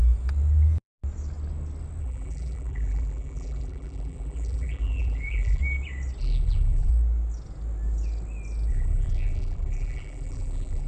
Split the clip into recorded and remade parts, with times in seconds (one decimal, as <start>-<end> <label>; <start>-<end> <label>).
0.0-2.0 recorded; 2.0-5.6 remade; 5.6-6.2 recorded; 6.2-6.9 remade; 6.9-8.7 recorded; 8.7-10.9 remade